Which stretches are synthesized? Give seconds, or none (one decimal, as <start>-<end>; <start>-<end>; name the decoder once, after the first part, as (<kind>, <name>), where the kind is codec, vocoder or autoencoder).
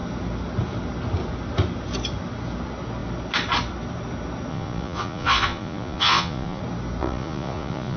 4.5-6.6 (vocoder, Vocos); 7.0-8.0